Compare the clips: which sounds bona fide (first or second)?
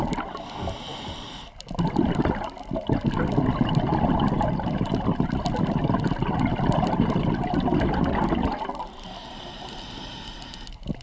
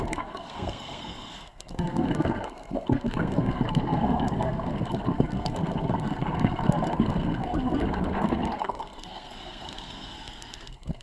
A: first